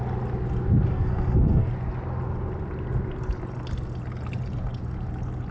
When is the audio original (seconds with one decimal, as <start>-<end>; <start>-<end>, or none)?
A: 0.0-0.9; 1.7-5.5